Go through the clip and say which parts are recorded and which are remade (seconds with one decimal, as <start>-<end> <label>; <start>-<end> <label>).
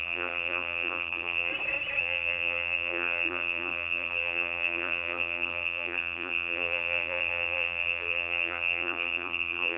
0.0-1.5 remade; 1.5-2.0 recorded; 2.0-9.8 remade